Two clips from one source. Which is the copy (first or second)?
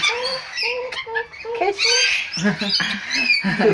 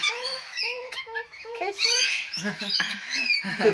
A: second